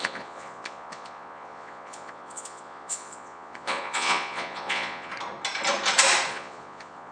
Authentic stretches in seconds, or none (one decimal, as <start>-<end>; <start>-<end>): 5.1-6.3